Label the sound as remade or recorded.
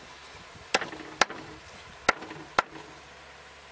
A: recorded